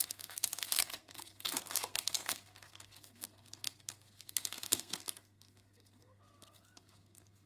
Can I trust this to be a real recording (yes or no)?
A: no